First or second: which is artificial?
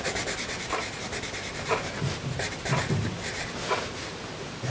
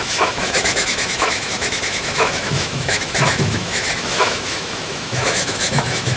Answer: second